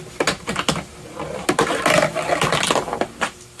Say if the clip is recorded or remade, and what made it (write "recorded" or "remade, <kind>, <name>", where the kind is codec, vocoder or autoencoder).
recorded